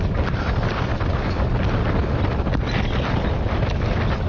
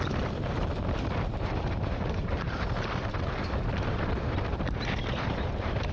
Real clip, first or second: first